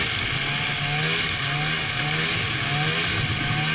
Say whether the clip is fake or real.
real